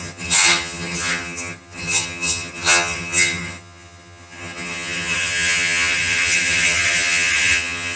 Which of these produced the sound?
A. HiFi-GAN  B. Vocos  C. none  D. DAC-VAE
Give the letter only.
A